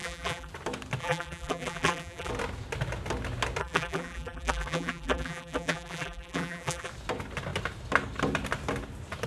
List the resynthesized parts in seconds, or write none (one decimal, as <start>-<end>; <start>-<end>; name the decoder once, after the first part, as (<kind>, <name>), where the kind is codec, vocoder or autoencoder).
0.0-0.5 (vocoder, BigVGAN v2); 1.0-2.3; 3.6-6.9